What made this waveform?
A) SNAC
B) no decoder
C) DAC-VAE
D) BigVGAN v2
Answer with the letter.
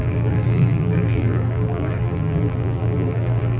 D